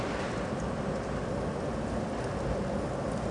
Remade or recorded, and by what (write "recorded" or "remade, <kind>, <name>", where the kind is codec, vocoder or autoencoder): remade, vocoder, BigVGAN v2